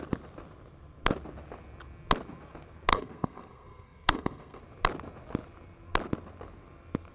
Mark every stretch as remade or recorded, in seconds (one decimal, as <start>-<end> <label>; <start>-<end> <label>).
0.0-2.9 recorded; 2.9-4.6 remade; 4.6-7.1 recorded